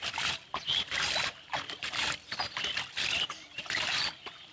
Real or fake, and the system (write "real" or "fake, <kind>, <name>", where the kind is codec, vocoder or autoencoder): real